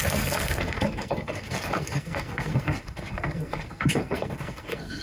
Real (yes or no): no